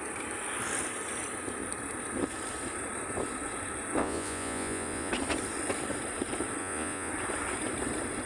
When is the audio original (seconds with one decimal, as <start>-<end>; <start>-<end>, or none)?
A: 0.0-4.0; 5.1-6.6; 7.1-8.3